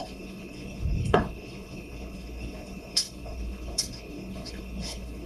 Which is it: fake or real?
fake